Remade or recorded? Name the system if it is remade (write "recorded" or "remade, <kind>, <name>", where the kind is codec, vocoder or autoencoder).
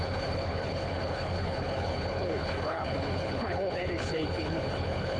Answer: remade, codec, HILCodec